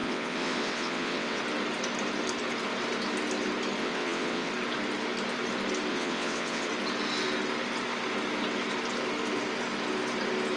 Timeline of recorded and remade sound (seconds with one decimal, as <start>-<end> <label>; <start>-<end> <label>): 0.0-1.4 remade; 1.4-3.8 recorded; 3.8-4.5 remade; 4.5-5.9 recorded; 5.9-6.7 remade; 6.7-10.6 recorded